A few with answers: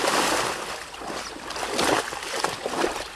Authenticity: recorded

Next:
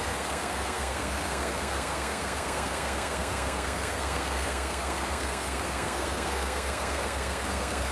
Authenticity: remade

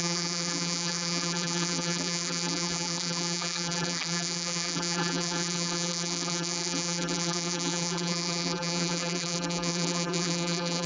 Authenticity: remade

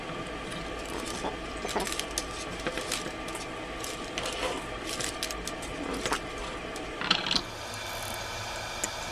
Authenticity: recorded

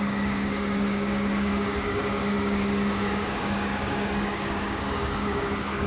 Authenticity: remade